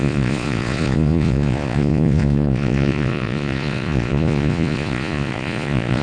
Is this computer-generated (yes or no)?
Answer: yes